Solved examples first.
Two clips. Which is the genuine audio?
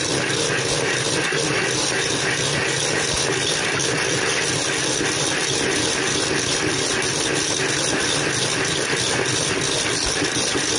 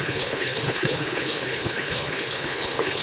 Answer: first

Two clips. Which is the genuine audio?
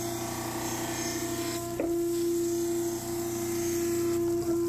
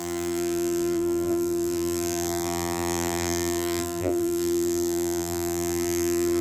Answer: first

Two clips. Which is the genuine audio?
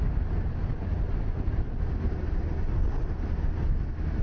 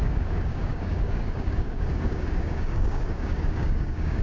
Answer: first